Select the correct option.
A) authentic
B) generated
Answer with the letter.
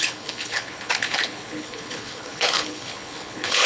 B